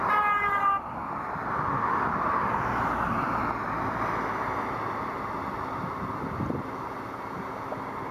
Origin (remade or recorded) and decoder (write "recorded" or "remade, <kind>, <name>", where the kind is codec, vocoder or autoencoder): recorded